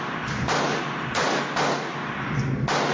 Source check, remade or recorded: recorded